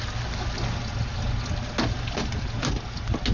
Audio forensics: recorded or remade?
recorded